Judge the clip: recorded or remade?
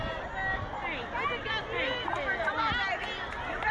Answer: recorded